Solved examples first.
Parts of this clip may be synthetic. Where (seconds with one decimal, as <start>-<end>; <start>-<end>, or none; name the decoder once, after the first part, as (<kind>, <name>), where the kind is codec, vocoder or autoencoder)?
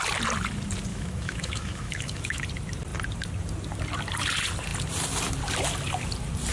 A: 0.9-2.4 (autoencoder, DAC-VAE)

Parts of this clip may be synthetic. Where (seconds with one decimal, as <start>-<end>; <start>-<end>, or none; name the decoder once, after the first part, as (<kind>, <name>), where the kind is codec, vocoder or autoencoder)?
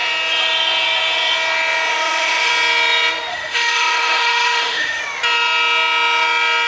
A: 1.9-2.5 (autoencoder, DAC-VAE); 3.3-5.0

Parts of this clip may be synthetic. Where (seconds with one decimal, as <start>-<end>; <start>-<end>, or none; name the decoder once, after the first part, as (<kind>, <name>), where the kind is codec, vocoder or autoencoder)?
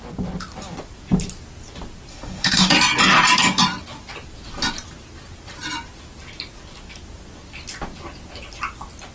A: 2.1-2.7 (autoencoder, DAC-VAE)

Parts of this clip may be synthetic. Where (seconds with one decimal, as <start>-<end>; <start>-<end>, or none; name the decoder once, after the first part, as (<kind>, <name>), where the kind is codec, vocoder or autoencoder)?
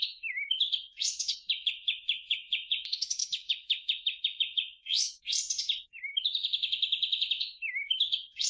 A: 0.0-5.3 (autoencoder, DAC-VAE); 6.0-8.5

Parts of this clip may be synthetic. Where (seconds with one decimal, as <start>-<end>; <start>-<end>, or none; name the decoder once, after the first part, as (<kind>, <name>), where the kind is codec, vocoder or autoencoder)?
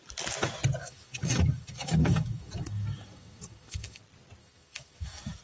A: 0.8-4.0 (autoencoder, DAC-VAE); 4.4-5.4